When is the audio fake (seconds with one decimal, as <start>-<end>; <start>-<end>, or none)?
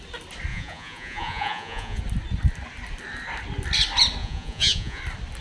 0.5-2.0; 4.2-5.0